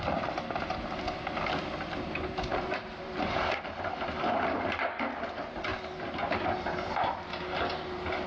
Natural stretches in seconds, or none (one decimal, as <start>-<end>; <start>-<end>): 0.0-2.5; 5.2-8.3